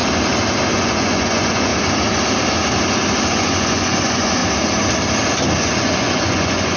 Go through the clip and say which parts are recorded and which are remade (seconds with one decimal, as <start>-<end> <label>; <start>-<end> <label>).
0.0-0.7 recorded; 0.7-1.7 remade; 1.7-3.3 recorded; 3.3-4.4 remade; 4.4-5.6 recorded; 5.6-6.8 remade